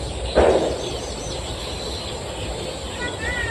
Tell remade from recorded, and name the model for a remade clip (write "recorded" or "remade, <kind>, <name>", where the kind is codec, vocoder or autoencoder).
recorded